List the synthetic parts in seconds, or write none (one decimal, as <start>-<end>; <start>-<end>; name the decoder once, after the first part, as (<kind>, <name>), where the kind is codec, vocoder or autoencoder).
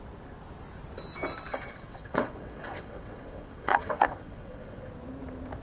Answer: 1.5-4.9 (vocoder, WaveNeXt)